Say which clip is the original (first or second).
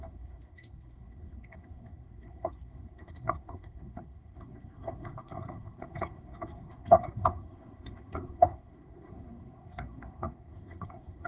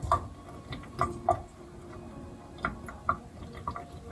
second